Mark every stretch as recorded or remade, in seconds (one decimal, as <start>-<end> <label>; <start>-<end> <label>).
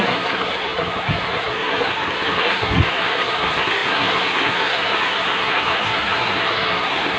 0.0-7.2 remade